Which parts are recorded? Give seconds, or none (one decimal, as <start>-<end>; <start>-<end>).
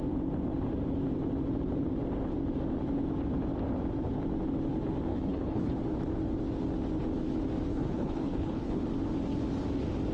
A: 0.0-5.1; 5.7-7.7; 8.8-10.1